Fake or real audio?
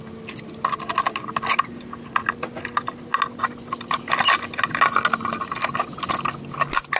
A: real